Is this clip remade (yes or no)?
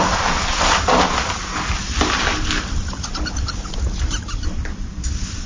no